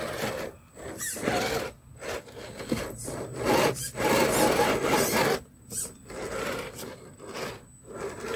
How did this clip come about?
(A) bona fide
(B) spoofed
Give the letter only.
A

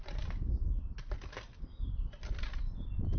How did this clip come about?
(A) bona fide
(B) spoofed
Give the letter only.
A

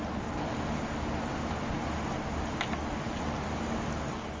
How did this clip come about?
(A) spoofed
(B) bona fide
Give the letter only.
B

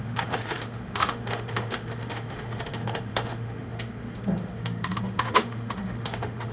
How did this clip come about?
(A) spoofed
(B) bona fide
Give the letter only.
A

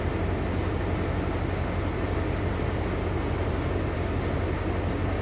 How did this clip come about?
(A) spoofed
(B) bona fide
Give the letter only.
B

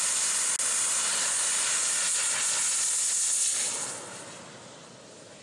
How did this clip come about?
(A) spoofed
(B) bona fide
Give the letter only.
B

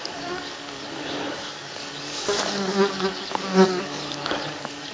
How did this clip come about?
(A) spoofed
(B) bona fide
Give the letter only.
A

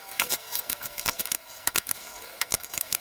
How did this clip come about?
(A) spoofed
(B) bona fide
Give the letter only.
A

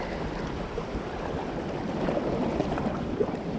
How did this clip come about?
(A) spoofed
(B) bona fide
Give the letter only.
A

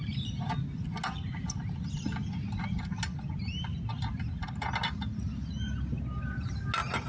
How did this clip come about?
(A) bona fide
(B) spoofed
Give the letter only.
A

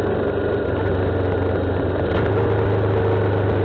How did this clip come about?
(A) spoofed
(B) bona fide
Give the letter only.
B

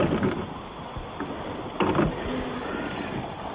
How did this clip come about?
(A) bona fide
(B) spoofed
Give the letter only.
A